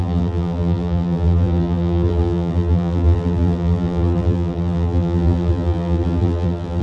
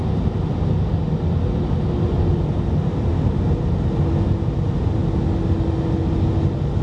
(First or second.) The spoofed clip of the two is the first